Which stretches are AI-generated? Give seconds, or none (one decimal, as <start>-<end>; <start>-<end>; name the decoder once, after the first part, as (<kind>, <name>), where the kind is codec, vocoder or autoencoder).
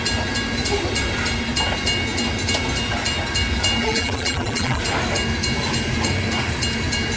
3.8-4.8 (vocoder, BigVGAN v2)